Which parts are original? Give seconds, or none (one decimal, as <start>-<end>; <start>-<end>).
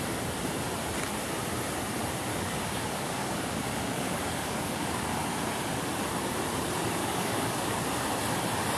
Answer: 0.0-2.3; 5.3-7.0; 7.8-8.8